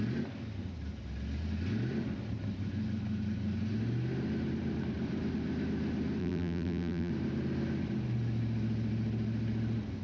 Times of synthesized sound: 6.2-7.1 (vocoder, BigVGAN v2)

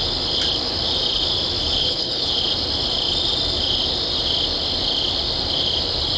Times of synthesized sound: 1.8-2.3 (codec, HILCodec)

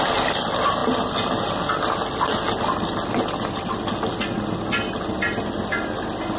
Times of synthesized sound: none